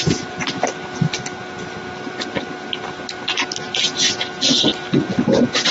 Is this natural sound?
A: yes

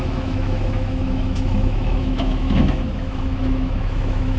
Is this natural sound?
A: no